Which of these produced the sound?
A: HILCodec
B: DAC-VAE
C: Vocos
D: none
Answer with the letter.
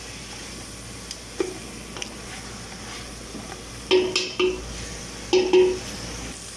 D